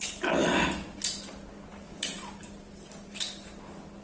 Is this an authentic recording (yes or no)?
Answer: yes